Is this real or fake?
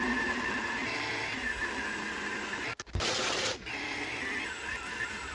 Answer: real